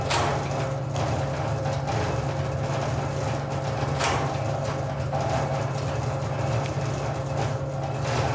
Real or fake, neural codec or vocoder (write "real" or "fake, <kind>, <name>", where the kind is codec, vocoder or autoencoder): real